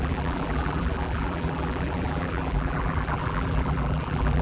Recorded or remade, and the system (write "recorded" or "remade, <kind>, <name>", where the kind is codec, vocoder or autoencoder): remade, vocoder, BigVGAN v2